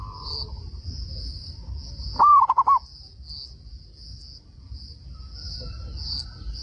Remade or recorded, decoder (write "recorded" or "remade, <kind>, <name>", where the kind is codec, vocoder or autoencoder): recorded